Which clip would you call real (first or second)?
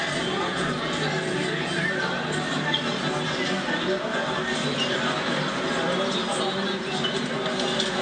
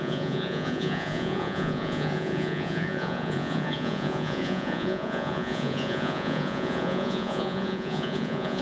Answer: first